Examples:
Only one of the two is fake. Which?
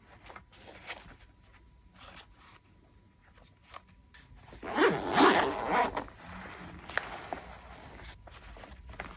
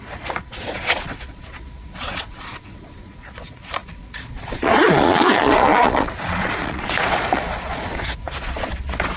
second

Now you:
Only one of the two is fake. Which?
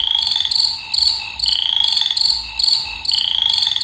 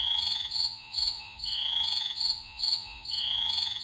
second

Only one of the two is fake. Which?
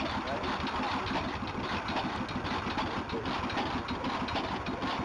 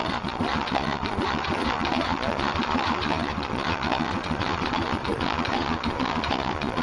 second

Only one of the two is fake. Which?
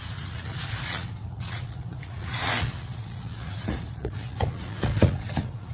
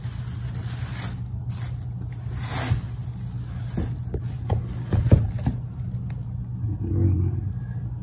first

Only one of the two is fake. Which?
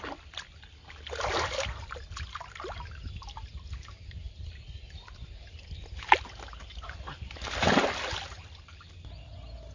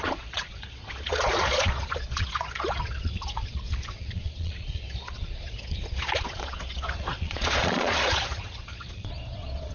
second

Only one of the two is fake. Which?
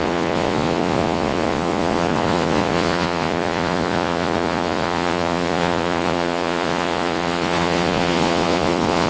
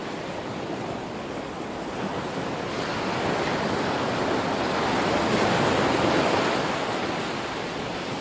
first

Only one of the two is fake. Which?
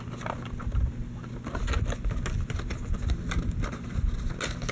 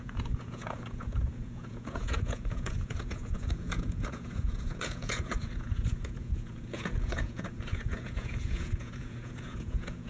second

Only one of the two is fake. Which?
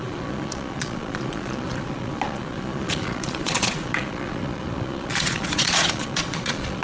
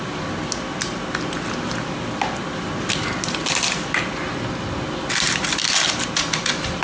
first